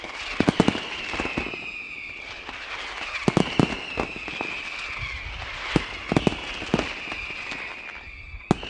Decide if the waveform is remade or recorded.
recorded